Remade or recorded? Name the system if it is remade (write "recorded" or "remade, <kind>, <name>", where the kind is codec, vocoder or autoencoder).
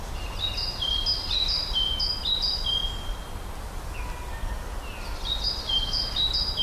recorded